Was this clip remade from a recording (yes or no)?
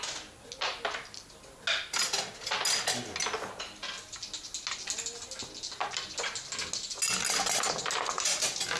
no